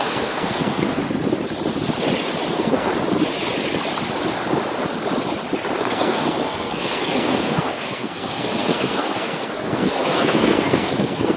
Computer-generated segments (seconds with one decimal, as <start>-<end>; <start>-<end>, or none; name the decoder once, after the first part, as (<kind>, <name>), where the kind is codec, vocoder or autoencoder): 0.0-1.0 (codec, SNAC); 2.5-2.9; 5.8-11.4

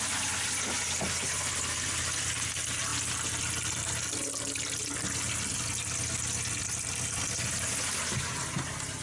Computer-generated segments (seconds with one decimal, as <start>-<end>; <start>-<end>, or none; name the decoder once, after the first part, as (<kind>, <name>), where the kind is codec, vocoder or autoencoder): none

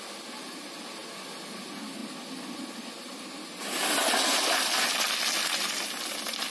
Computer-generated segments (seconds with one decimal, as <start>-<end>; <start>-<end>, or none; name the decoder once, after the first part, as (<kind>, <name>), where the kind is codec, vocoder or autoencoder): none

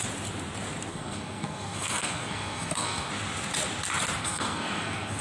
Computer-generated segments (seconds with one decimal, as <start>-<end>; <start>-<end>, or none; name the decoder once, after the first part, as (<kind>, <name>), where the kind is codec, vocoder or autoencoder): 0.9-3.1 (codec, SNAC); 4.2-5.2

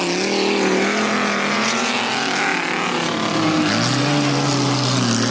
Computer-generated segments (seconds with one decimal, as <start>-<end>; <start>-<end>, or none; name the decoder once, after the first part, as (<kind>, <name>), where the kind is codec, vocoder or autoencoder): none